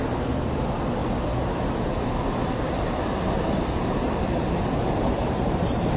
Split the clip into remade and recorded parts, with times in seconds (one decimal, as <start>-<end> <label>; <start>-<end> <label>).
0.0-1.0 recorded; 1.0-1.6 remade; 1.6-2.4 recorded; 2.4-6.0 remade